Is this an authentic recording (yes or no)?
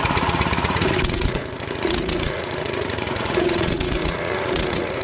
no